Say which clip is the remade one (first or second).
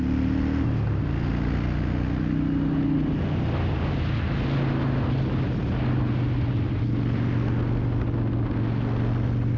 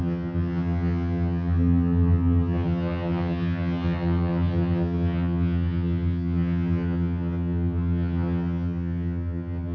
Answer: second